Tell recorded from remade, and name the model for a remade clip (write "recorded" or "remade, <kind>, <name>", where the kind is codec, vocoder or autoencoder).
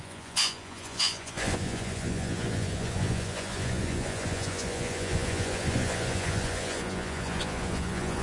remade, vocoder, Vocos